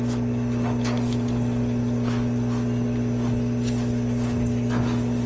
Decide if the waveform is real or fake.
real